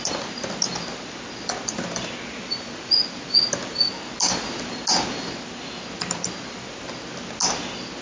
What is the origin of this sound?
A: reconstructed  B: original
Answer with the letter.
B